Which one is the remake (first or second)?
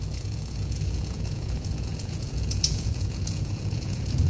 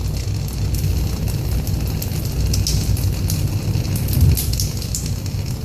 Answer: first